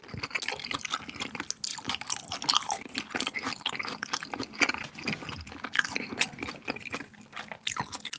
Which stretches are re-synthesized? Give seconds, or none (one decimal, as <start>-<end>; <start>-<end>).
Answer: none